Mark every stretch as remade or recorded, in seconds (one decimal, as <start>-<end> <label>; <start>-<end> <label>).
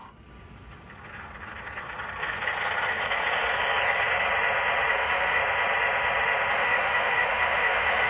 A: 0.0-4.9 recorded; 4.9-5.4 remade; 5.4-6.5 recorded; 6.5-8.1 remade